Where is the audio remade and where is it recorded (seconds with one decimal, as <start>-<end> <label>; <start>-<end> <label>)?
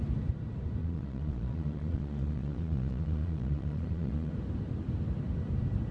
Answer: 0.0-0.8 recorded; 0.8-4.3 remade; 4.3-5.9 recorded